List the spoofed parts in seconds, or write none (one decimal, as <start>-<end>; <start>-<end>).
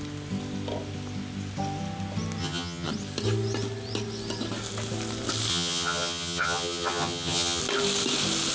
2.4-2.9; 5.5-7.6